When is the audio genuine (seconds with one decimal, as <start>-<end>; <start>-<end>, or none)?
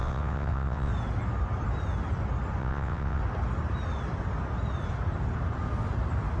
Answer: 0.9-2.6; 3.2-6.4